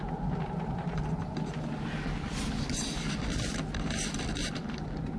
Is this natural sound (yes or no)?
yes